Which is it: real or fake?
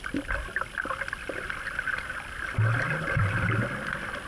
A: real